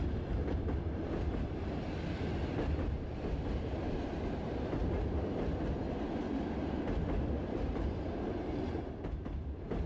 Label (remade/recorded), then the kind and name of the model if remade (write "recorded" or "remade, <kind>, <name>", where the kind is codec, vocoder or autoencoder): recorded